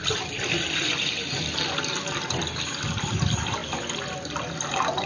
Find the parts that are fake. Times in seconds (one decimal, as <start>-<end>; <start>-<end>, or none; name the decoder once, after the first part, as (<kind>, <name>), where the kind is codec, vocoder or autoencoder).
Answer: none

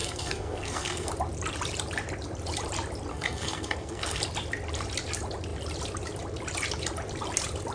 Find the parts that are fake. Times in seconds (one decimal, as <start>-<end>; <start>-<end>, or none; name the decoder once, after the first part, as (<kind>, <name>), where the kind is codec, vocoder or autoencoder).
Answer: 0.0-1.1 (codec, SNAC); 3.1-4.2